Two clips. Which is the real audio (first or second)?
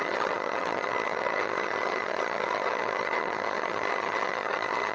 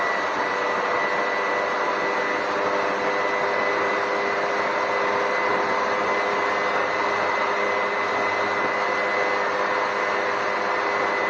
second